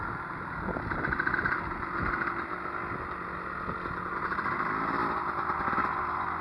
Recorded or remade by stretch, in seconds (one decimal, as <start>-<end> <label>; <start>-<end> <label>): 0.0-6.4 recorded